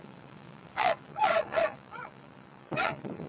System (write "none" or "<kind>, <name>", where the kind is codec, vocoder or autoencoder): vocoder, WaveNeXt